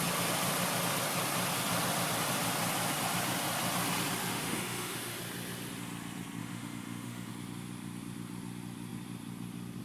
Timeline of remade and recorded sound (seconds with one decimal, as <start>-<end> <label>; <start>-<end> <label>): 0.0-4.3 recorded; 4.3-5.2 remade; 5.2-6.4 recorded; 6.4-7.3 remade; 7.3-9.8 recorded